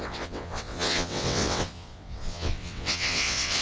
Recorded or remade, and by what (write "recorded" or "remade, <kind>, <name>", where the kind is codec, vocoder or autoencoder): remade, vocoder, WaveNeXt